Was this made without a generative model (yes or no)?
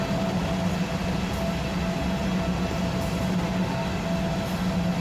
yes